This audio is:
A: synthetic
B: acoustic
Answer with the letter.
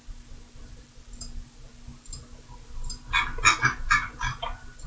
B